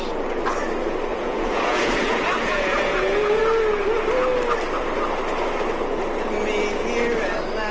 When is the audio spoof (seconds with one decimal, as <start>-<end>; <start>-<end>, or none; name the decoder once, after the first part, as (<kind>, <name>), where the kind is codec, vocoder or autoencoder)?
1.1-3.4 (vocoder, Vocos)